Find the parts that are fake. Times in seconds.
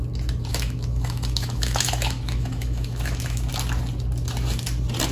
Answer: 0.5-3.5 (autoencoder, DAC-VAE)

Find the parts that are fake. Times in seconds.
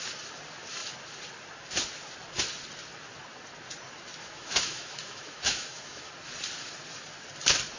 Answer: 4.2-6.1 (autoencoder, DAC-VAE)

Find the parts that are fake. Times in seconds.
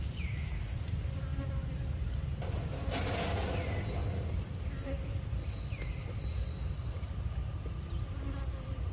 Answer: none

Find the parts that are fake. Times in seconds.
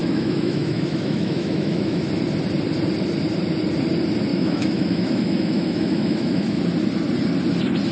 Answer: 0.0-2.0 (autoencoder, DAC-VAE); 4.3-6.6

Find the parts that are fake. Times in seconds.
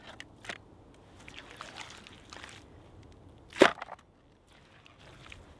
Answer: none